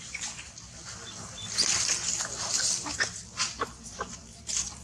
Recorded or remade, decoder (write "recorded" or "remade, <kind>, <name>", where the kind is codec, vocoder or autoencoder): recorded